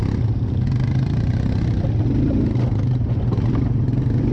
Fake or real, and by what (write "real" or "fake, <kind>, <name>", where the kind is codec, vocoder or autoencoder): real